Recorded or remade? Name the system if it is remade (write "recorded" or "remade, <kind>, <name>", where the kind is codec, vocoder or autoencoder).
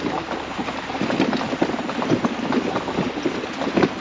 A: recorded